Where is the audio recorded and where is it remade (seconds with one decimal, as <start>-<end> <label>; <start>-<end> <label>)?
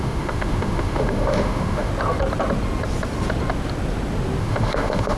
0.0-1.9 remade; 1.9-4.4 recorded; 4.4-5.2 remade